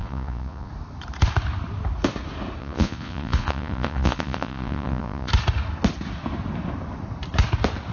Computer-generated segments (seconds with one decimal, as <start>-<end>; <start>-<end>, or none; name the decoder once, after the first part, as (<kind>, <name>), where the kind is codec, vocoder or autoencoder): 0.0-0.7 (vocoder, Vocos); 2.6-5.3